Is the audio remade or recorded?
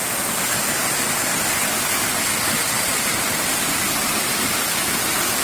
recorded